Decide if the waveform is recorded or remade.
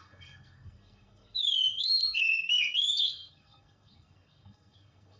remade